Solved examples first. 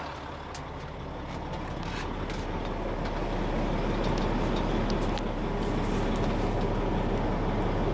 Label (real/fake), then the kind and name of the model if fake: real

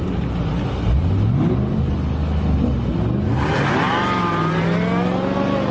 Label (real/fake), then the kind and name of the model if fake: real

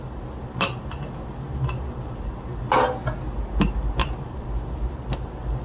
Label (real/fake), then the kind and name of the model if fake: real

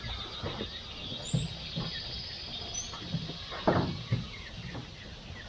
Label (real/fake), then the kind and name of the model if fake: real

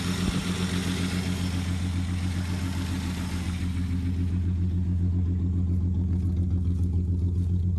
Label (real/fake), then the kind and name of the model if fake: real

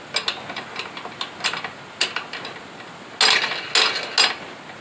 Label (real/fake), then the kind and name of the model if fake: real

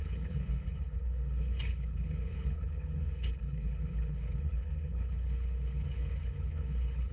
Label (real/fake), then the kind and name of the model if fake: fake, codec, HILCodec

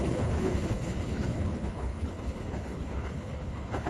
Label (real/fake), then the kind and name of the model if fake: fake, codec, HILCodec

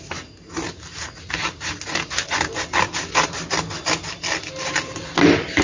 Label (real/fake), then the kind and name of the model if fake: real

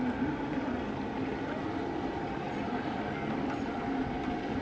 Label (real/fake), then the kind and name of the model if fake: real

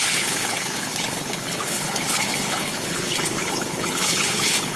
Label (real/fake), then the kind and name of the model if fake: fake, codec, HILCodec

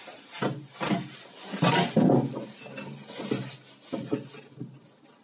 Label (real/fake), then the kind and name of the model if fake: real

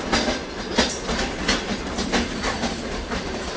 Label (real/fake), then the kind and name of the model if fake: real